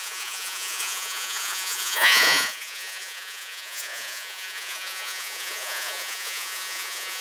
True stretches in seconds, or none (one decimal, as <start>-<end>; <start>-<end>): none